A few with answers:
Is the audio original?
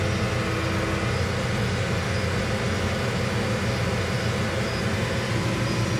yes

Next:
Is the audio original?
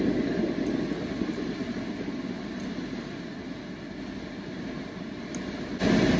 yes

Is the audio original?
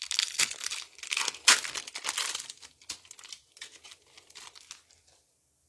yes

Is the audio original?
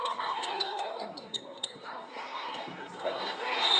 no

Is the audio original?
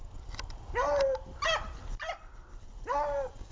yes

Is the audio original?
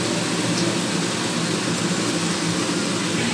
yes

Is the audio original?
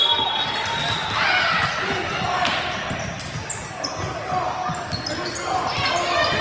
yes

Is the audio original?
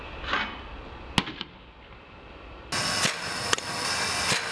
yes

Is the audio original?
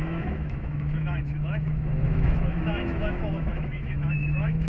no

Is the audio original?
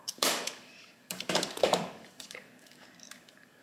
no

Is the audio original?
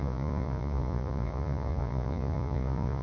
no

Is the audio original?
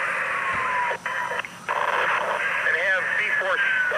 yes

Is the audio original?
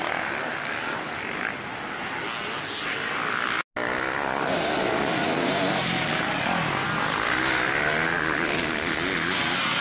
yes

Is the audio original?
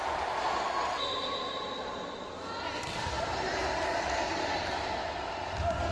yes